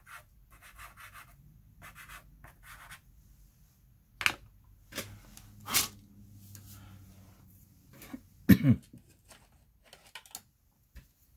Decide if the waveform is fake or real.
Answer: real